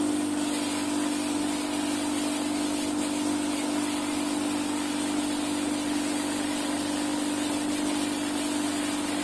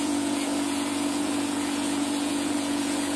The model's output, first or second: second